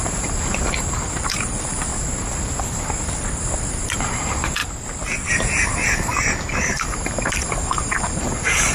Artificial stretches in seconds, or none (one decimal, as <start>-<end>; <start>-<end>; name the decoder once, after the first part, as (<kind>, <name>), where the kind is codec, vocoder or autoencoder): 0.0-1.9 (vocoder, BigVGAN v2); 4.0-4.6; 5.3-6.1; 6.6-8.7